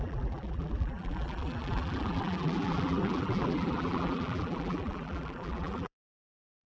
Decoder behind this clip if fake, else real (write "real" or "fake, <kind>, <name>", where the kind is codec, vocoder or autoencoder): fake, vocoder, BigVGAN v2